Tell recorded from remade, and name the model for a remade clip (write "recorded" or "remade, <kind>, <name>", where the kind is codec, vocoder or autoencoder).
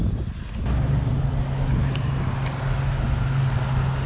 recorded